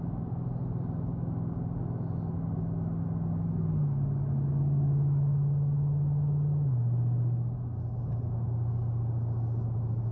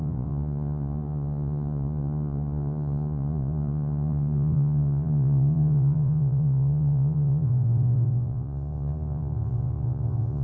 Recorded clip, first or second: first